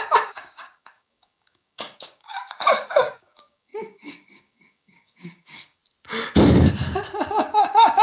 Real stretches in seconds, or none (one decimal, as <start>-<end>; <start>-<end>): 5.8-7.3